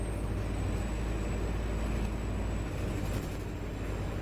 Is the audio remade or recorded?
recorded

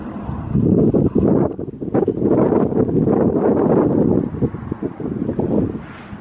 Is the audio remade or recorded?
recorded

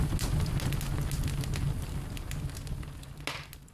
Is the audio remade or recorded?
recorded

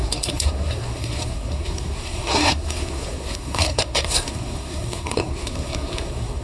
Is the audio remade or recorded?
remade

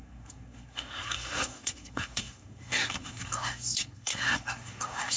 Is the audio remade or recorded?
remade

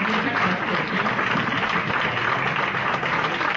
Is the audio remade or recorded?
recorded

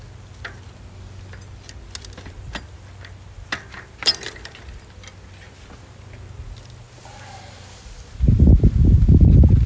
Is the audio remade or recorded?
recorded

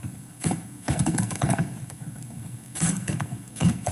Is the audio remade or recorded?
remade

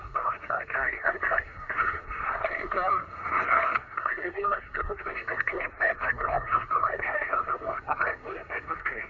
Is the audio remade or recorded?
remade